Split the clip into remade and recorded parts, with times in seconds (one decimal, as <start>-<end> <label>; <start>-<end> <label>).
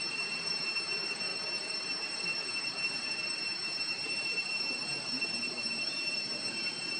0.0-7.0 remade